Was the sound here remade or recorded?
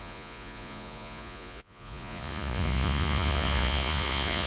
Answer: remade